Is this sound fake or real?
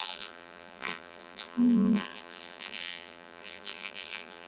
fake